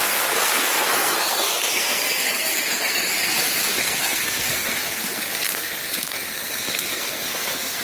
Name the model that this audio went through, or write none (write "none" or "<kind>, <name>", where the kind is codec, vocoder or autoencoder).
codec, SNAC